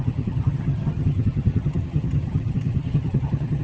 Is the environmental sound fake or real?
fake